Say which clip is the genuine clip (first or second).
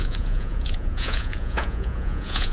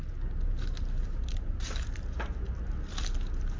second